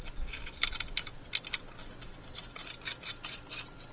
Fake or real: real